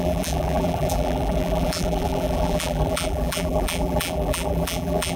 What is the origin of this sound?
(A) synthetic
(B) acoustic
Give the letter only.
A